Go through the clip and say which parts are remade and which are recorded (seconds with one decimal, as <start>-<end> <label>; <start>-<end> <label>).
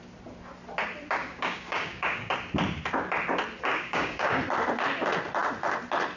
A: 0.0-1.2 recorded; 1.2-2.3 remade; 2.3-3.7 recorded; 3.7-4.4 remade; 4.4-6.2 recorded